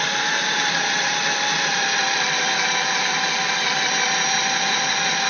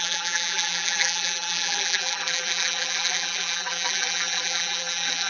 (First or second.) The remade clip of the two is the second